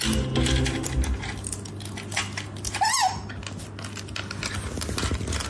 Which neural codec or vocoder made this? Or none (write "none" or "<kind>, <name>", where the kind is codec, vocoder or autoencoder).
none